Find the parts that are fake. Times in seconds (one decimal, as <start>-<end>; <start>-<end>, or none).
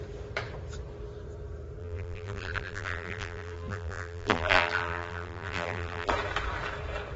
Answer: 1.8-6.1